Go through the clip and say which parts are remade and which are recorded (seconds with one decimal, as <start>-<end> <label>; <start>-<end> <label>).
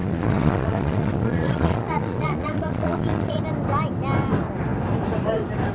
0.0-3.4 remade; 3.4-5.7 recorded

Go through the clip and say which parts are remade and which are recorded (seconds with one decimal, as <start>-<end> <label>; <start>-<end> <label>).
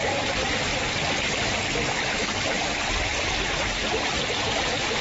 0.0-5.0 recorded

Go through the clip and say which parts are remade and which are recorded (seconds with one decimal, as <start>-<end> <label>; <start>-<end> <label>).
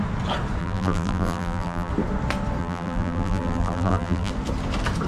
0.0-0.6 recorded; 0.6-1.9 remade; 1.9-2.6 recorded; 2.6-4.3 remade; 4.3-5.1 recorded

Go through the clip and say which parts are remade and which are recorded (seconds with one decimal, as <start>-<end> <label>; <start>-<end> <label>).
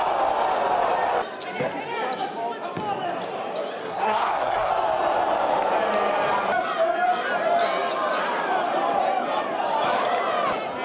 0.0-3.8 recorded; 3.8-4.7 remade; 4.7-10.8 recorded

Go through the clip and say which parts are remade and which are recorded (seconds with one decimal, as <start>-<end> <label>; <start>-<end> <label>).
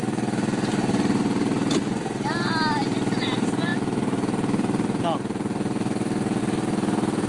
0.0-7.3 recorded